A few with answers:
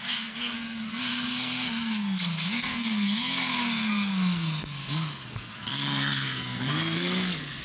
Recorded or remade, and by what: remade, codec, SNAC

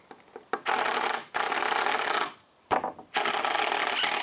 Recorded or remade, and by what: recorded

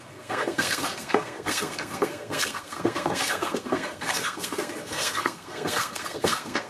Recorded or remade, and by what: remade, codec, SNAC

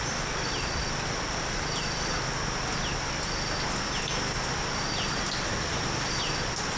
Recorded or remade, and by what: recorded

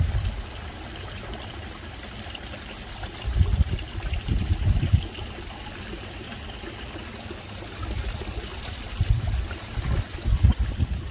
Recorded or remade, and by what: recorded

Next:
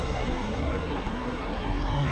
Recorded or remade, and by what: remade, codec, SNAC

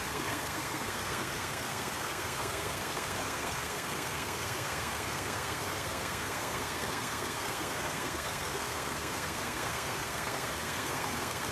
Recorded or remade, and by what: remade, codec, SNAC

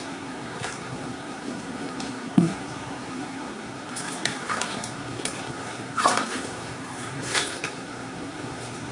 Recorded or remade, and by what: remade, codec, SNAC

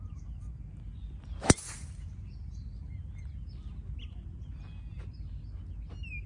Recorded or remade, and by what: recorded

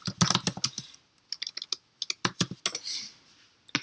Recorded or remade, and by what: recorded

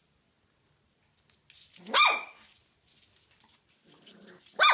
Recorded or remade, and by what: recorded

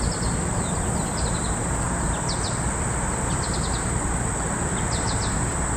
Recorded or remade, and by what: recorded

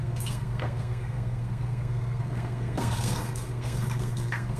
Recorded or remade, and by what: remade, codec, SNAC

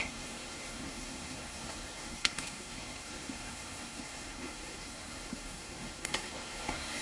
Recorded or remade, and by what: remade, codec, SNAC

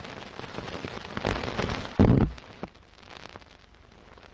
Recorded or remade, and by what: recorded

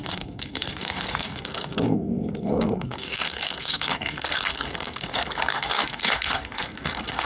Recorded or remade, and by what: remade, codec, SNAC